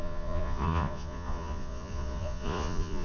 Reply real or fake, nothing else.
fake